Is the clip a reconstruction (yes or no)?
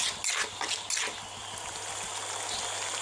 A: no